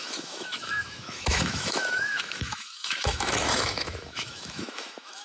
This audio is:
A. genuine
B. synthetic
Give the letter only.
B